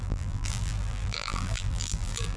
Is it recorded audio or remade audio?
remade